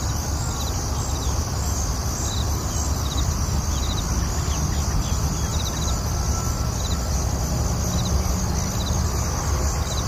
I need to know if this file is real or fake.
real